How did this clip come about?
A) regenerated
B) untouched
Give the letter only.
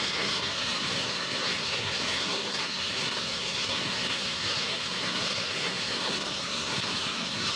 A